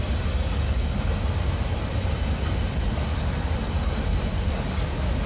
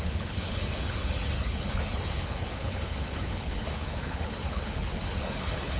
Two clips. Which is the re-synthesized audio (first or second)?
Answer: second